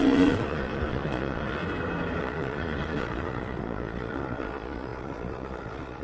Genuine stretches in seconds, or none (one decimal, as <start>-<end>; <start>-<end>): 1.6-2.2